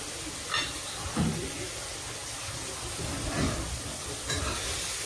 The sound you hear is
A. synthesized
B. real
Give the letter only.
B